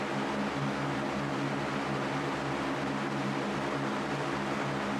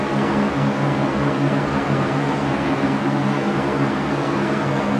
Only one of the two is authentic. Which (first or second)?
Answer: first